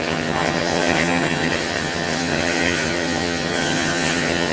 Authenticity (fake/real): fake